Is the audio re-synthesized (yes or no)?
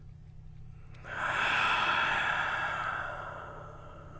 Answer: no